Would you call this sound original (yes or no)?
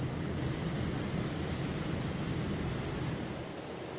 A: yes